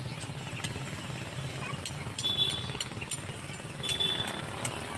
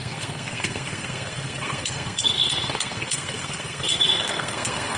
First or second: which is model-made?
second